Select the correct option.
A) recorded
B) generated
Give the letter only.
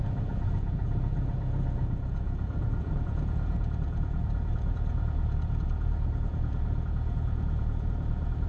B